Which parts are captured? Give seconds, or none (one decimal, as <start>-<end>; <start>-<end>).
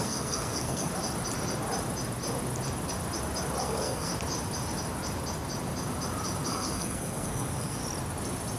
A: 0.9-3.6; 4.1-6.5; 7.8-8.6